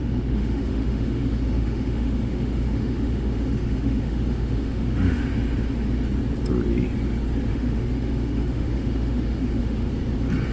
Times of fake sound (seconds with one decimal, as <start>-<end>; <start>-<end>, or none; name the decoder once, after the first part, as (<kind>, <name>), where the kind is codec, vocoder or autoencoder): 0.0-5.3 (autoencoder, DAC-VAE); 7.5-9.9